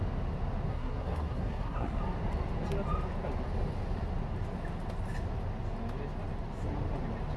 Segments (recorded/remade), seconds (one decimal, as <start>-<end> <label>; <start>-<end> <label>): 0.0-0.7 recorded; 0.7-2.0 remade; 2.0-7.4 recorded